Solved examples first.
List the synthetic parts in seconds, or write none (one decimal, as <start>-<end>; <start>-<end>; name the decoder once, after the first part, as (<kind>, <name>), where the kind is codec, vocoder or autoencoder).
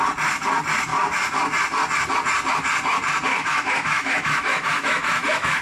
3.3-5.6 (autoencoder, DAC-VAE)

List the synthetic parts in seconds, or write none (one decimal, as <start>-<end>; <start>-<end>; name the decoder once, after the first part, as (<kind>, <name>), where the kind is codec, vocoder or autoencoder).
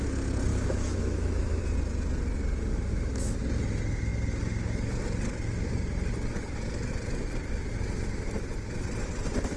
0.5-1.6 (autoencoder, DAC-VAE); 2.7-3.4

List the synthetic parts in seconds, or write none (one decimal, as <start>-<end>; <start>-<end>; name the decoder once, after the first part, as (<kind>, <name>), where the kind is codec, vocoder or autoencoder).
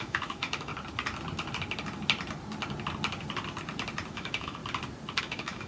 0.0-0.7 (autoencoder, DAC-VAE); 4.1-4.6; 5.2-5.7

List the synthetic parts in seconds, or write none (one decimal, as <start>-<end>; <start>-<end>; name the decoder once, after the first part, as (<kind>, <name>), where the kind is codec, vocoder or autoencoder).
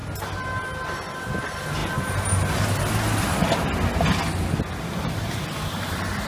none